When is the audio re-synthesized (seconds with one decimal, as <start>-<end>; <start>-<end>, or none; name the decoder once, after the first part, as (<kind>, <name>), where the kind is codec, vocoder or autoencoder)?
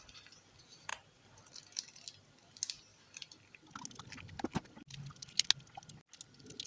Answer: none